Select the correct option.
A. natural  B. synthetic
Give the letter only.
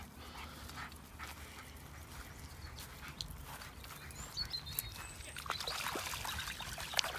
A